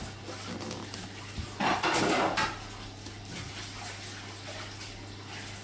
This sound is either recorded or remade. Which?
recorded